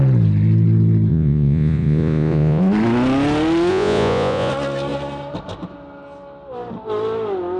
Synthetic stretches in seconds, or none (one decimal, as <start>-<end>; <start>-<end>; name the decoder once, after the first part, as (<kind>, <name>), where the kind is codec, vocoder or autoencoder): 1.1-2.6 (vocoder, Vocos); 3.7-4.5